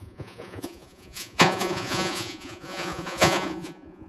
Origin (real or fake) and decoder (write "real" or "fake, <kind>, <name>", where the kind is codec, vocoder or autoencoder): fake, vocoder, Vocos